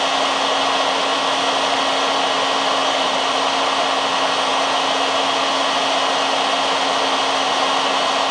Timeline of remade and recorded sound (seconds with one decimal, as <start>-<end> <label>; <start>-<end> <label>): 0.0-2.8 recorded; 2.8-3.4 remade; 3.4-8.3 recorded